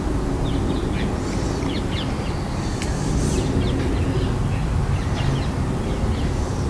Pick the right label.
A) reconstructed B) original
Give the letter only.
B